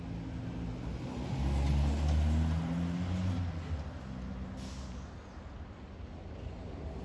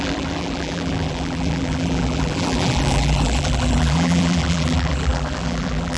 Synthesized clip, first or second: second